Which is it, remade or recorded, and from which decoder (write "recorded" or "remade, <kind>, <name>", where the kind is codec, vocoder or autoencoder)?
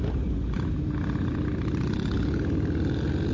remade, vocoder, BigVGAN v2